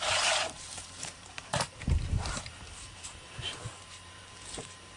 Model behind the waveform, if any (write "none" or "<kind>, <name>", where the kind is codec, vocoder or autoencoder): vocoder, BigVGAN v2